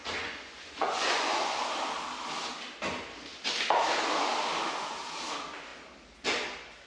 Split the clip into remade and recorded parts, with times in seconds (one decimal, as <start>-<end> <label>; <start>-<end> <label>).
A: 0.0-1.7 remade; 1.7-6.9 recorded